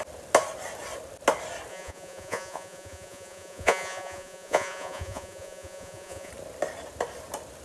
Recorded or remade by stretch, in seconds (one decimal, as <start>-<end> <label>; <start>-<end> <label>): 0.0-1.7 recorded; 1.7-6.3 remade; 6.3-7.6 recorded